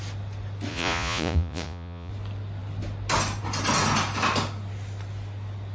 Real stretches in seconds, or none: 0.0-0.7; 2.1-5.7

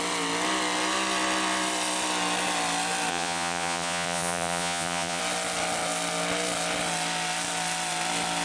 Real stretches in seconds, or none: 0.0-3.1; 5.2-8.4